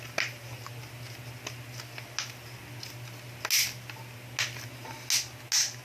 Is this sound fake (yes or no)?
no